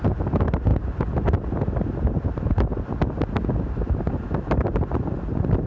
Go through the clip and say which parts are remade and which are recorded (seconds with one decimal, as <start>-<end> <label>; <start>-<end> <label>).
0.0-5.7 recorded